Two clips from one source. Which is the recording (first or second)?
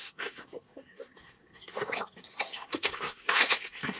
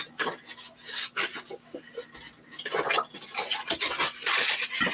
second